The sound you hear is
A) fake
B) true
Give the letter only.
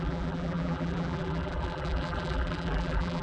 A